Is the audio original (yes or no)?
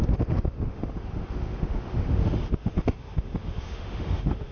no